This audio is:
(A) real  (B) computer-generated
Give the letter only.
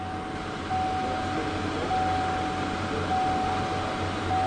A